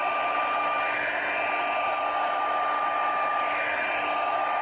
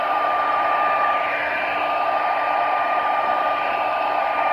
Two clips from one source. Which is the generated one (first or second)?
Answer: second